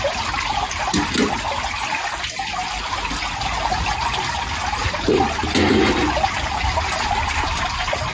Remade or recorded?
recorded